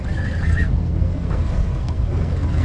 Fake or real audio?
fake